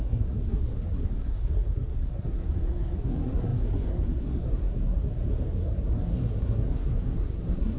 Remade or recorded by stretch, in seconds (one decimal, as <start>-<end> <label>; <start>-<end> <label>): 0.0-7.8 remade